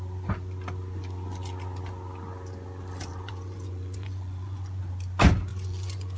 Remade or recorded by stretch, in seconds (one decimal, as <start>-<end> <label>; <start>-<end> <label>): 0.0-3.1 recorded; 3.1-4.8 remade; 4.8-5.5 recorded; 5.5-6.2 remade